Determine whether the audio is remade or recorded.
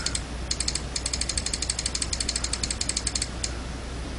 recorded